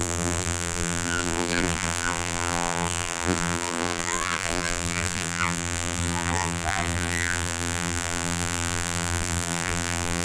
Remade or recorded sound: remade